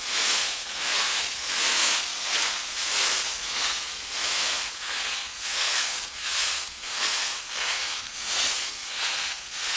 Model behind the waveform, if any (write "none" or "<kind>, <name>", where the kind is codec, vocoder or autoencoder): codec, SNAC